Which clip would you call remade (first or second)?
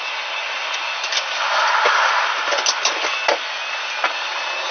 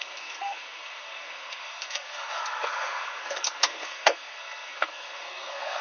second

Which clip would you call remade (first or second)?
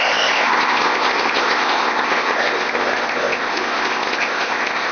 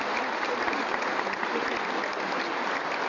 first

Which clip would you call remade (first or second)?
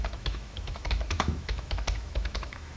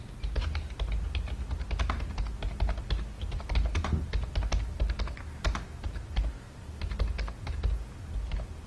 first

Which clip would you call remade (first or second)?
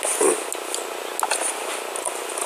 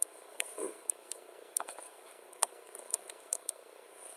second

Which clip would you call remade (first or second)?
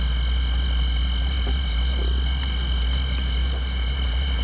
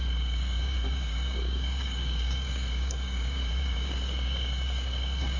second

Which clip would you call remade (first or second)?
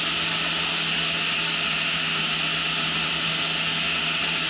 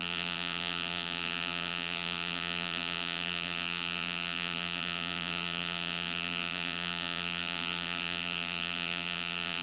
second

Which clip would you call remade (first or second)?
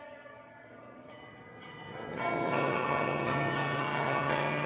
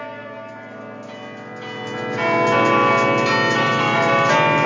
first